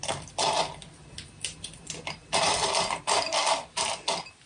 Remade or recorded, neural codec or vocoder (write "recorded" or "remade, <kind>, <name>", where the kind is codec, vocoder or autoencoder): recorded